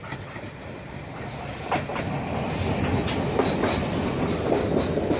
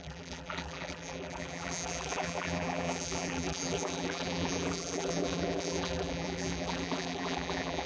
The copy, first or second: second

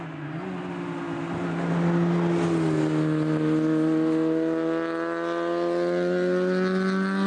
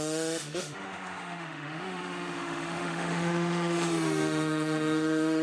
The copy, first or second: second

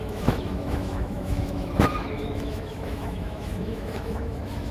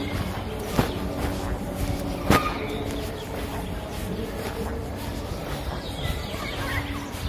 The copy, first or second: first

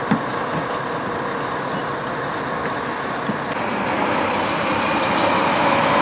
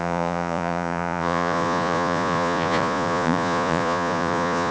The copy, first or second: second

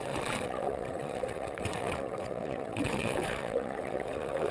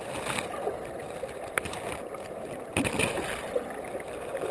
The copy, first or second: first